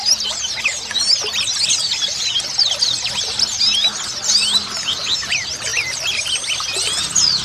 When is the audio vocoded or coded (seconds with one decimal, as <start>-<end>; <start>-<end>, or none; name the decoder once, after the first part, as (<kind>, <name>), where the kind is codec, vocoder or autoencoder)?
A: none